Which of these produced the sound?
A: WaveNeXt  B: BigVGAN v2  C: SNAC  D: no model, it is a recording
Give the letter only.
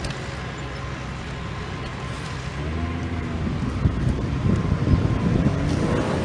D